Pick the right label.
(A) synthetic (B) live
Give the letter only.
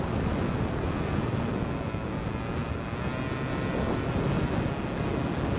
B